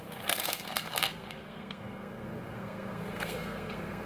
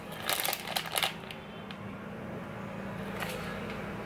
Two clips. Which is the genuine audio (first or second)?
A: second